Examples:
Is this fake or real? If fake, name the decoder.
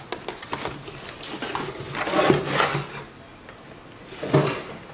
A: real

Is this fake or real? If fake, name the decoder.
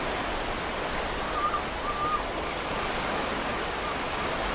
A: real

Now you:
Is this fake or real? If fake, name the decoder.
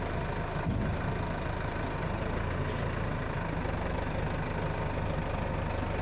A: real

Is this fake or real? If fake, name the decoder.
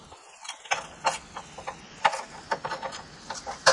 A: real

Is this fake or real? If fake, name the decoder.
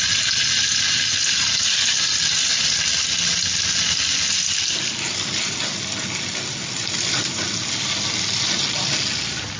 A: real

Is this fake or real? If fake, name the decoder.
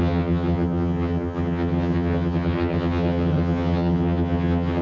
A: fake, vocoder, HiFi-GAN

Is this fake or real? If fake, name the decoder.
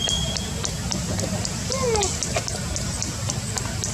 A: real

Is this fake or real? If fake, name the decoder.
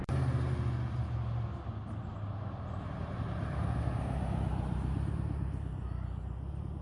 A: real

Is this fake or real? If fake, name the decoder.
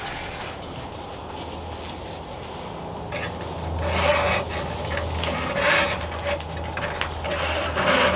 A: real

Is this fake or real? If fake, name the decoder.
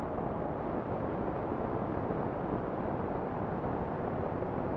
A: real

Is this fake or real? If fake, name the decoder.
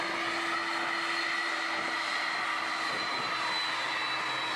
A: real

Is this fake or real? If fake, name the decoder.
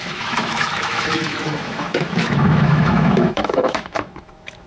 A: fake, autoencoder, DAC-VAE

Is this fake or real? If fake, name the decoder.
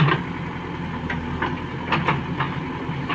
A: real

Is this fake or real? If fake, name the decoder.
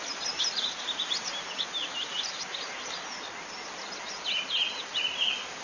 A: real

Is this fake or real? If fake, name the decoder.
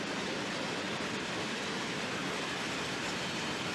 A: real